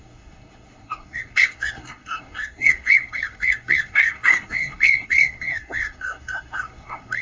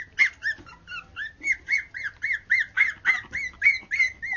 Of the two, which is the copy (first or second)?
first